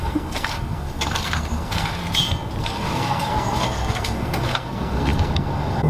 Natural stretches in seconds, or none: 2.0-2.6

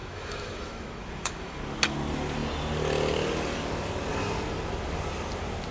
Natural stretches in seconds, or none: 1.6-5.7

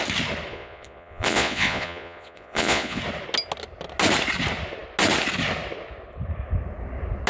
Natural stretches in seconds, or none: 0.0-0.5; 3.0-7.3

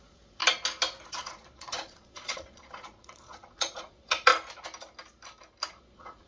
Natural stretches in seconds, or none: 0.4-1.1; 4.3-5.7

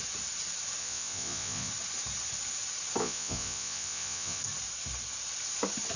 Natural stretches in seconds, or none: 0.0-0.8; 1.7-3.0; 4.4-6.0

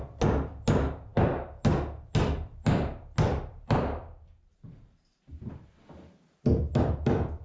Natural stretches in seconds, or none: 0.0-7.4

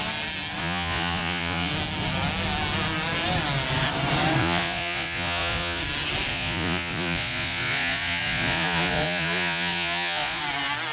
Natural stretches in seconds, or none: 0.0-0.6; 1.7-4.4; 5.8-6.3; 10.4-10.9